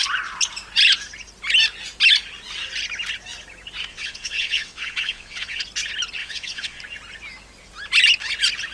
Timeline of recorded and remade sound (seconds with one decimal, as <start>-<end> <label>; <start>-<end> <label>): 0.0-3.9 recorded; 3.9-5.6 remade; 5.6-6.2 recorded; 6.2-6.8 remade; 6.8-8.7 recorded